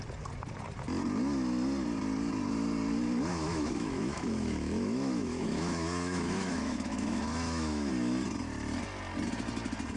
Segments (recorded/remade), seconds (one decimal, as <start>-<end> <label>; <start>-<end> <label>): 0.0-3.3 recorded; 3.3-7.9 remade; 7.9-10.0 recorded